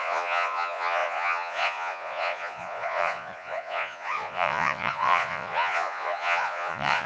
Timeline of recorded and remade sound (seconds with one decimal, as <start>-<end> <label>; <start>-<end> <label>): 0.0-7.1 remade